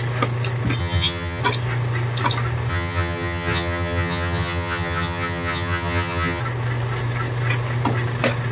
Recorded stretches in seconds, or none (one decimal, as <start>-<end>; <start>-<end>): 0.0-0.8; 1.4-2.7; 6.4-8.5